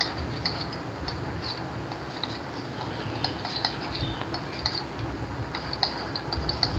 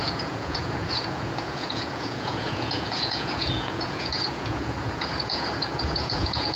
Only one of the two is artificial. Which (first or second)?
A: second